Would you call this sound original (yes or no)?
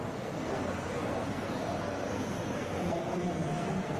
no